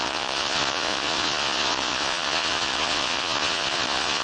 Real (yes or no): no